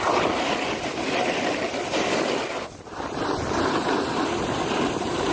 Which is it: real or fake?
real